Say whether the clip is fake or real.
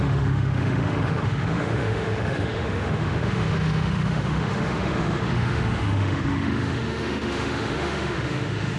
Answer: fake